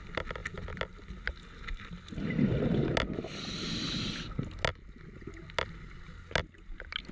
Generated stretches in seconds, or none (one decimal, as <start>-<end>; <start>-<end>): none